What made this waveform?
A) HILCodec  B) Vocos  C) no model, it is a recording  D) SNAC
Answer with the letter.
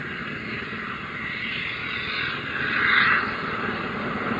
C